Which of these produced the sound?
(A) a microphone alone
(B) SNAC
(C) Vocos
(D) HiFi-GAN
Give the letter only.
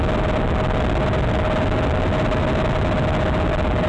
A